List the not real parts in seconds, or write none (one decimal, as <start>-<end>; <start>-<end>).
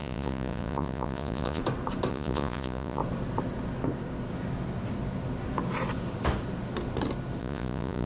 0.0-1.6; 2.1-3.0; 7.4-8.1